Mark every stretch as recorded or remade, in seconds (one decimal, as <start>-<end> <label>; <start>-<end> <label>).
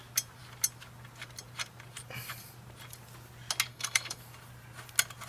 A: 0.0-3.7 recorded; 3.7-4.2 remade; 4.2-5.3 recorded